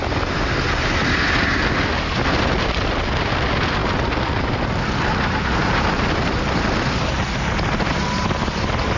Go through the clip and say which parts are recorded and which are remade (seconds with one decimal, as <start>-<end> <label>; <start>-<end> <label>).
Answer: 0.0-9.0 recorded